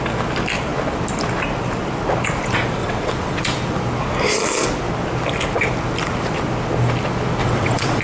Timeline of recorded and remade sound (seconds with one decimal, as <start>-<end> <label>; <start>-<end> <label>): 0.0-2.8 recorded; 2.8-3.4 remade; 3.4-7.4 recorded; 7.4-8.0 remade